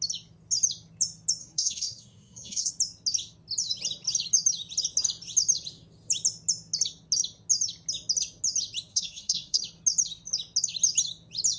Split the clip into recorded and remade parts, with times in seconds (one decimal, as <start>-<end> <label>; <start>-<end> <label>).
0.0-1.4 recorded; 1.4-2.7 remade; 2.7-8.9 recorded; 8.9-9.6 remade; 9.6-11.6 recorded

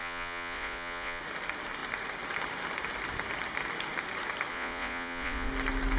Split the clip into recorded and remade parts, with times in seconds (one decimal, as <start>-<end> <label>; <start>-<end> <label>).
0.0-1.2 remade; 1.2-4.5 recorded; 4.5-5.5 remade; 5.5-6.0 recorded

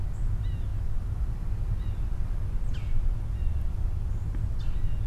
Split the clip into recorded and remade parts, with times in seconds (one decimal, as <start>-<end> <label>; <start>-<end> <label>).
0.0-5.1 recorded

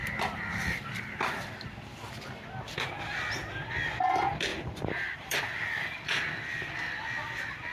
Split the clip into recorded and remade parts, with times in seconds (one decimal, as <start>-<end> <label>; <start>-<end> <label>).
0.0-1.5 remade; 1.5-4.5 recorded; 4.5-5.4 remade; 5.4-7.7 recorded